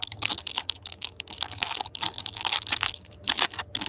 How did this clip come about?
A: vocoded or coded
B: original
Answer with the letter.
A